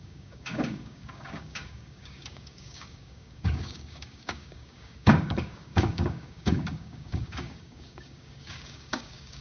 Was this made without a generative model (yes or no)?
no